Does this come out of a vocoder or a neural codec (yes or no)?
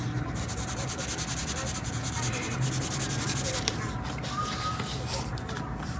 no